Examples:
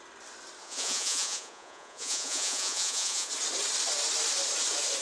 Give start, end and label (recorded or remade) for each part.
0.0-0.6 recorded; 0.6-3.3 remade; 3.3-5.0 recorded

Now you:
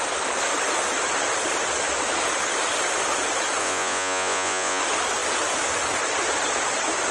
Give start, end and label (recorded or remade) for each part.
0.0-3.6 recorded; 3.6-4.8 remade; 4.8-7.1 recorded

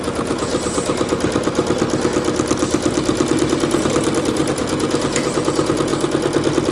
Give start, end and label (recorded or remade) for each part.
0.0-0.5 remade; 0.5-4.5 recorded; 4.5-5.9 remade; 5.9-6.7 recorded

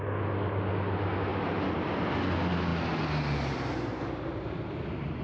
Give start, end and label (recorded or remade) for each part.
0.0-5.2 recorded

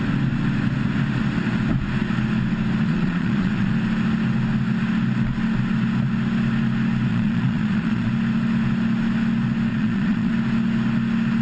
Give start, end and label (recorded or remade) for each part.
0.0-2.8 recorded; 2.8-3.7 remade; 3.7-7.1 recorded; 7.1-8.1 remade; 8.1-9.7 recorded; 9.7-10.3 remade; 10.3-11.4 recorded

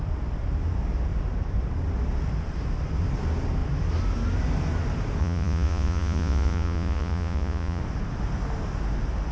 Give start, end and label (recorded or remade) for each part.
0.0-5.2 recorded; 5.2-7.8 remade; 7.8-9.3 recorded

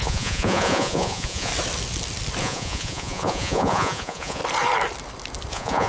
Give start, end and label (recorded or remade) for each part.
0.0-1.5 remade; 1.5-2.4 recorded; 2.4-4.4 remade; 4.4-5.5 recorded; 5.5-5.9 remade

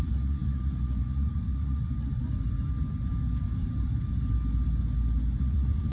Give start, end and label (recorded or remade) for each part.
0.0-2.1 remade; 2.1-5.4 recorded; 5.4-5.9 remade